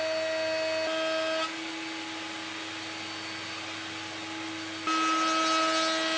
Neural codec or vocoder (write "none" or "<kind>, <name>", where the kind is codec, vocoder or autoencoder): none